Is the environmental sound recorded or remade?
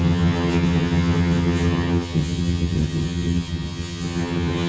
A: remade